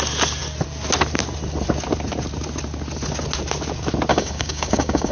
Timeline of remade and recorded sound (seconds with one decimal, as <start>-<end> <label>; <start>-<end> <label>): 0.0-4.1 recorded; 4.1-5.1 remade